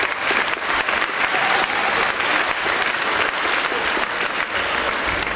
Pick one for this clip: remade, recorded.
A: recorded